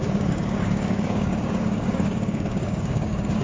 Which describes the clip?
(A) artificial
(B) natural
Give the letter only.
A